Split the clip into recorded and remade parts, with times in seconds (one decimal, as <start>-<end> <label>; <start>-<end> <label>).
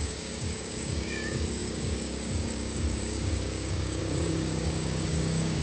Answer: 0.0-5.6 remade